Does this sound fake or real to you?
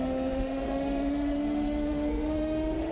fake